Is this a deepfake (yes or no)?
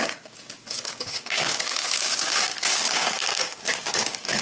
yes